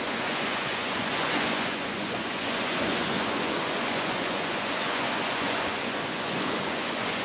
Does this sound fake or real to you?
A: fake